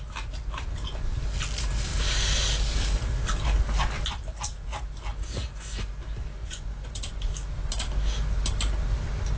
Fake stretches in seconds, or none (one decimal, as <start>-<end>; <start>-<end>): 5.1-5.9; 6.4-7.3